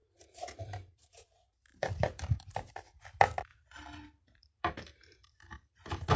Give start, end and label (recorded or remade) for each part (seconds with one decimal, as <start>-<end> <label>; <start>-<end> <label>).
0.0-1.1 remade; 1.1-1.7 recorded; 1.7-2.7 remade; 2.7-3.5 recorded; 3.5-6.2 remade